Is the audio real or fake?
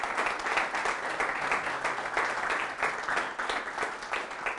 real